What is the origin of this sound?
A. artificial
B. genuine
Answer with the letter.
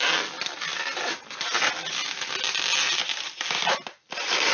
B